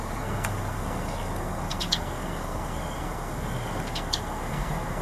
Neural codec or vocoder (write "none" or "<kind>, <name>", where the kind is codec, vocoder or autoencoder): codec, SNAC